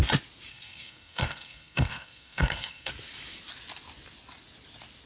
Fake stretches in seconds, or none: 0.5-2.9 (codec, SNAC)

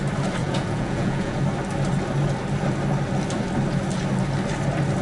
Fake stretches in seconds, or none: 0.4-1.4 (vocoder, Vocos)

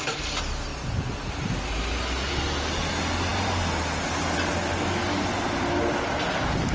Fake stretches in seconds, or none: none